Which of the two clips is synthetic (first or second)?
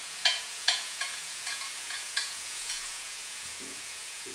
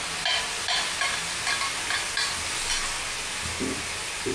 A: first